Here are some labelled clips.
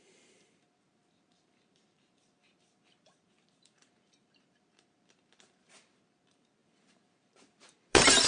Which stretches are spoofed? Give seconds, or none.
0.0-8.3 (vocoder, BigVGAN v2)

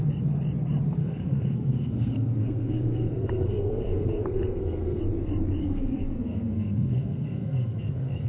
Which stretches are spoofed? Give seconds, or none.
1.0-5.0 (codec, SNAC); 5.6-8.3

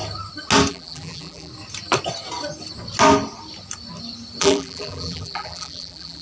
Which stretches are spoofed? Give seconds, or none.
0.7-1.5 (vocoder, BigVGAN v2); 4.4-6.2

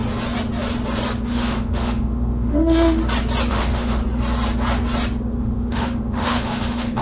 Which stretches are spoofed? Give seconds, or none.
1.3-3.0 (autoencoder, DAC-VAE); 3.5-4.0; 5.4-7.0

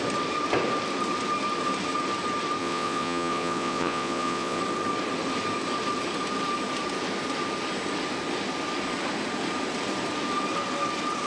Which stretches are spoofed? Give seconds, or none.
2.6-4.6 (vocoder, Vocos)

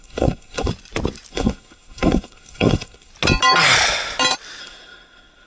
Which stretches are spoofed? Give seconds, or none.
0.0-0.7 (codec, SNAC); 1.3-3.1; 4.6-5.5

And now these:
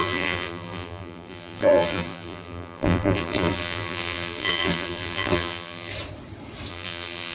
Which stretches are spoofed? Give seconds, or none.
0.0-5.9 (vocoder, BigVGAN v2); 6.7-7.3